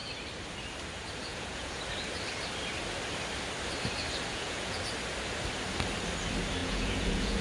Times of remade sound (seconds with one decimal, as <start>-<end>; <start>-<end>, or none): 1.3-1.8; 4.3-4.8; 6.6-7.4